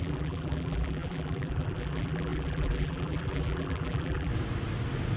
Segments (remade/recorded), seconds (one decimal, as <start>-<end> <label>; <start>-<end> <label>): 0.0-4.3 remade; 4.3-5.2 recorded